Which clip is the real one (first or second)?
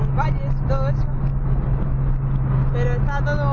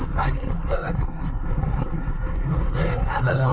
first